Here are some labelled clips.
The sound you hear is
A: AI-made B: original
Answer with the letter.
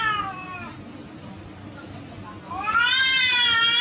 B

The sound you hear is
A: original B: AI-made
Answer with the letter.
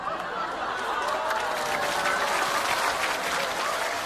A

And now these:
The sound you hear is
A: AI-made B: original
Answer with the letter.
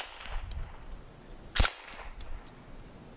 B